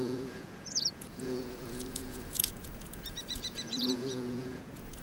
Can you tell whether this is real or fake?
fake